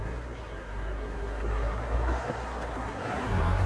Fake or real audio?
fake